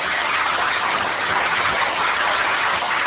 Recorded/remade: remade